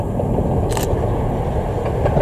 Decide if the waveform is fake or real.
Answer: real